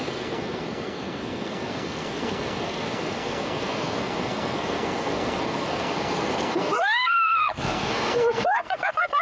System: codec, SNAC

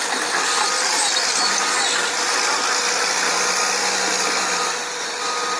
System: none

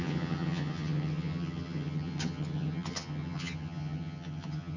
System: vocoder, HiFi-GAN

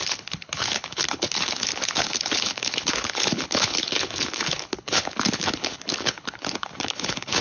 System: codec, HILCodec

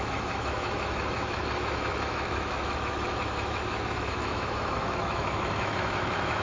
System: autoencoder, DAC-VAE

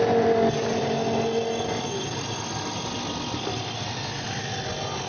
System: none